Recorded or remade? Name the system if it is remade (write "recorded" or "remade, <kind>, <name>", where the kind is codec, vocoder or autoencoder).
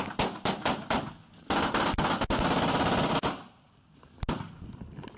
recorded